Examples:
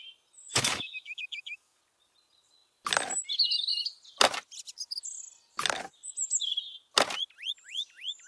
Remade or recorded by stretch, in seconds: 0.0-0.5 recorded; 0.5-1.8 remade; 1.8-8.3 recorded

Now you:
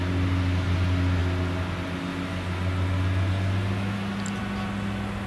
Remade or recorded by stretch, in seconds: 0.0-5.3 recorded

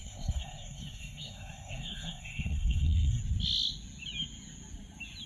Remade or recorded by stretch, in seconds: 0.0-3.2 remade; 3.2-5.3 recorded

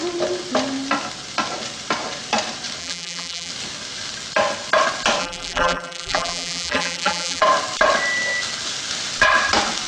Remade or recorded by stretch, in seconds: 0.0-2.8 recorded; 2.8-3.5 remade; 3.5-5.2 recorded; 5.2-7.4 remade; 7.4-9.9 recorded

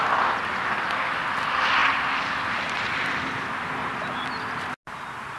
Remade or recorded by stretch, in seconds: 0.0-5.4 recorded